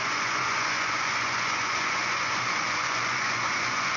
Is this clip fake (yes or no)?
yes